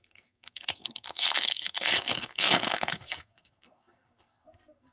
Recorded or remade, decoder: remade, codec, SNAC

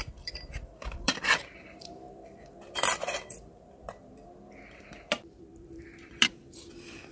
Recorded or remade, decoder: remade, vocoder, BigVGAN v2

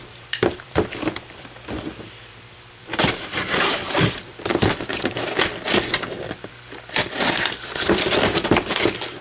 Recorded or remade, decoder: remade, vocoder, BigVGAN v2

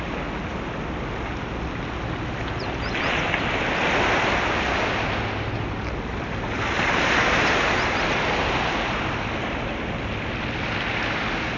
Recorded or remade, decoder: recorded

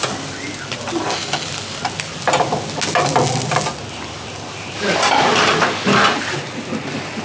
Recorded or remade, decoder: recorded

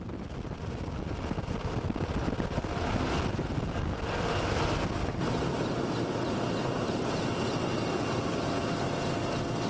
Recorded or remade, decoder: recorded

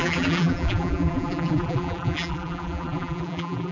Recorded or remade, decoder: remade, vocoder, BigVGAN v2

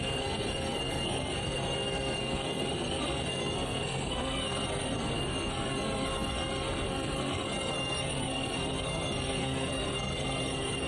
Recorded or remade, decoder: remade, codec, SNAC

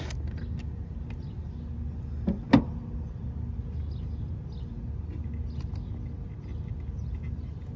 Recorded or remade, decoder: recorded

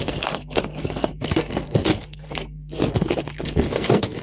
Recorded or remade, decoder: remade, codec, SNAC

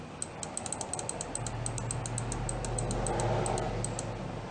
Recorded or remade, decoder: recorded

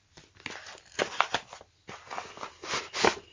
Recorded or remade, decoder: recorded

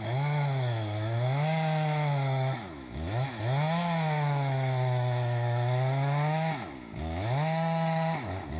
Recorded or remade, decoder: remade, autoencoder, DAC-VAE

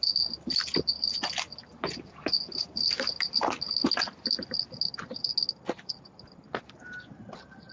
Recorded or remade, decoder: recorded